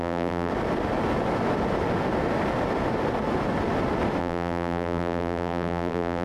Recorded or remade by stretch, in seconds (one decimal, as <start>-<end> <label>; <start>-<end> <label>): 0.0-0.5 remade; 0.5-4.2 recorded; 4.2-6.2 remade